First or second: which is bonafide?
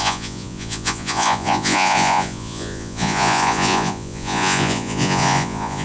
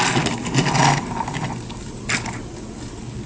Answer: second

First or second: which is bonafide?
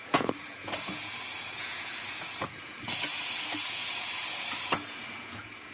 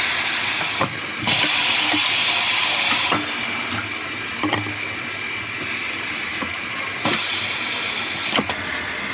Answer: second